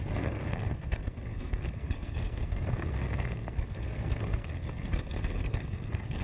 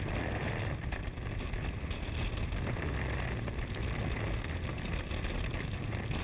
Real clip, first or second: second